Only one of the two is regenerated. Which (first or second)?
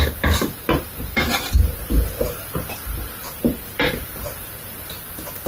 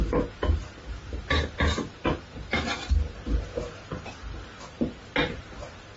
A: first